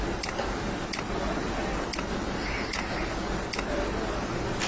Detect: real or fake real